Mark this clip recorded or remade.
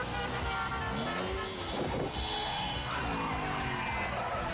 recorded